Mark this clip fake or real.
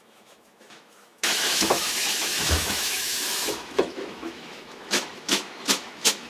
fake